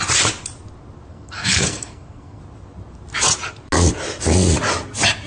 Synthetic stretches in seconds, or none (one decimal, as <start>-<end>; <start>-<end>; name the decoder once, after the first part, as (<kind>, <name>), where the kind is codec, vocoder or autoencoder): 1.1-2.4 (codec, SNAC)